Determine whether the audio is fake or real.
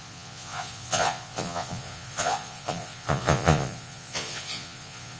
fake